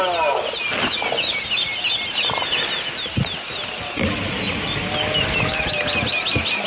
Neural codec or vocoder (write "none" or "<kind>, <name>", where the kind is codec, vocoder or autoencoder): none